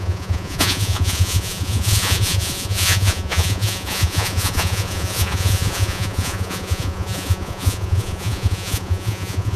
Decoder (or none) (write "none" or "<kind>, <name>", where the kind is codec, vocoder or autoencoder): vocoder, Vocos